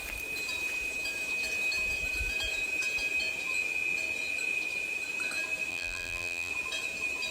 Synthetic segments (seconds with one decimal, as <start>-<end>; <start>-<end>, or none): 5.7-6.5